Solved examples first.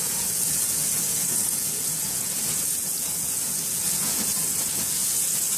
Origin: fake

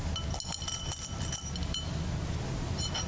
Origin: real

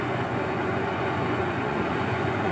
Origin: fake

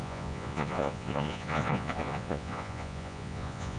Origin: fake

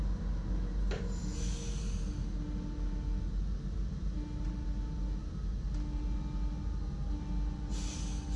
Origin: real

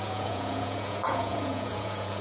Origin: fake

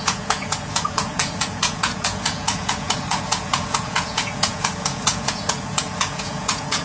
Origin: fake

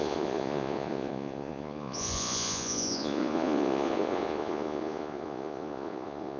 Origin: fake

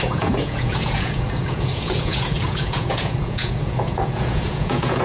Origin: fake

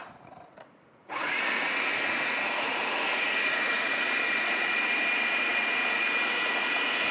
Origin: fake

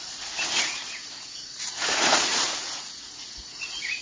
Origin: fake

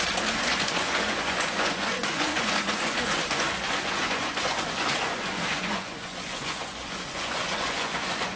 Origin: fake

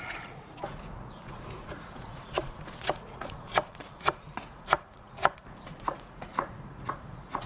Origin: fake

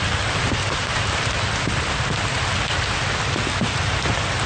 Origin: real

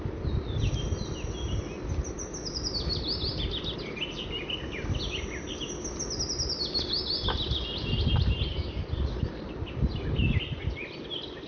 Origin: real